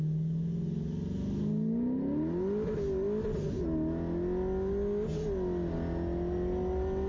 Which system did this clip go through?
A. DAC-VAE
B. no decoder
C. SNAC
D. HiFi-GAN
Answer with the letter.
B